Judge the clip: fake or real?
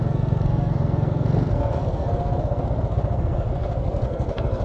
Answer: fake